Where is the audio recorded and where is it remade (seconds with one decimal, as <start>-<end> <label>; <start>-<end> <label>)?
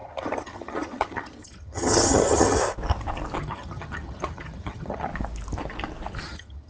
0.0-2.6 remade; 2.6-3.4 recorded; 3.4-5.1 remade; 5.1-6.2 recorded; 6.2-6.7 remade